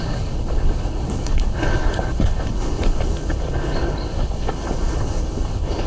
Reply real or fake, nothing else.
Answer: fake